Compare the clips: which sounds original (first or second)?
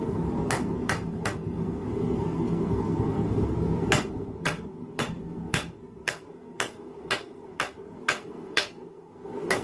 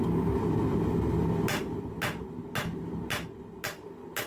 second